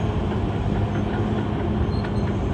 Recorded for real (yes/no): yes